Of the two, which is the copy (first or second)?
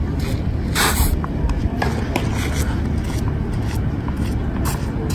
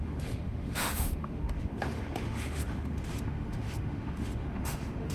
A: second